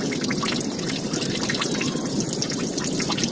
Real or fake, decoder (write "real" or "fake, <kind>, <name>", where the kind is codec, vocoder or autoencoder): real